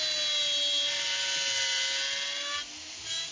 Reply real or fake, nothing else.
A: real